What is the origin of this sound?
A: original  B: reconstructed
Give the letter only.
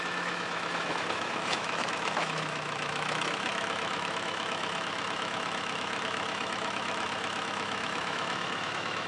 B